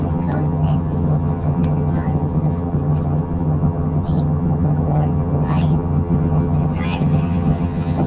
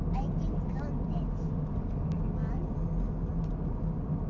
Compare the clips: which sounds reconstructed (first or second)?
first